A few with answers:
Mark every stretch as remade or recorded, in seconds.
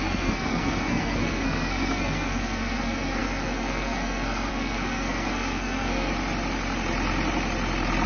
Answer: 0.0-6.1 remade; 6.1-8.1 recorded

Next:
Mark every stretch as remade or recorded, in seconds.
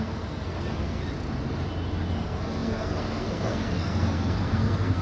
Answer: 0.0-1.0 remade; 1.0-2.1 recorded; 2.1-5.0 remade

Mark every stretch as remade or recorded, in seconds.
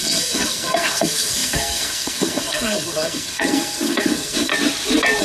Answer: 0.0-4.5 remade; 4.5-5.2 recorded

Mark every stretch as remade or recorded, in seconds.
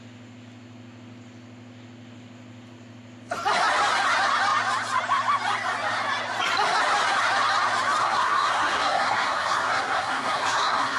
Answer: 0.0-8.0 recorded; 8.0-11.0 remade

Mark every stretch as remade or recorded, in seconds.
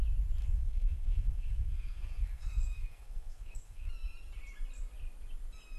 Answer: 0.0-0.4 recorded; 0.4-3.9 remade; 3.9-5.8 recorded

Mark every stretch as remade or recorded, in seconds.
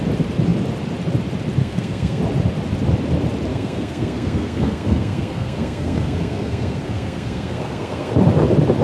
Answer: 0.0-1.6 recorded; 1.6-2.2 remade; 2.2-3.5 recorded; 3.5-8.1 remade; 8.1-8.8 recorded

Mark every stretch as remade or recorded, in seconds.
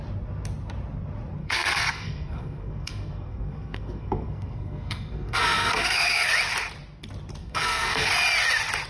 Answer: 0.0-1.4 recorded; 1.4-6.3 remade; 6.3-7.4 recorded; 7.4-8.1 remade; 8.1-8.9 recorded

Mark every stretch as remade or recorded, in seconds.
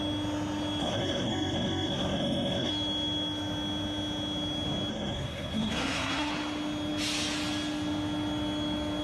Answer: 0.0-0.8 recorded; 0.8-2.7 remade; 2.7-4.9 recorded; 4.9-6.3 remade; 6.3-9.0 recorded